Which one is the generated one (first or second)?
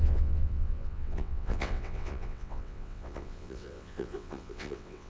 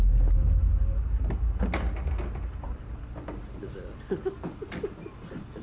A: first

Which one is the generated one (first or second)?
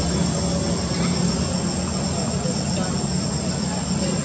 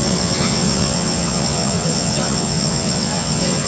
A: second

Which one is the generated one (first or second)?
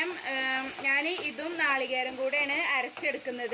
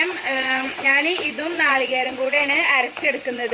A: second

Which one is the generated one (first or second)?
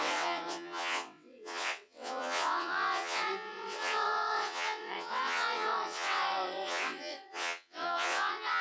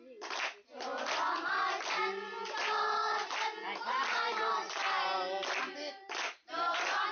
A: first